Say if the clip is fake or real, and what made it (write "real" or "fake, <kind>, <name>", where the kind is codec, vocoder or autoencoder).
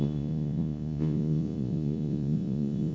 fake, vocoder, Vocos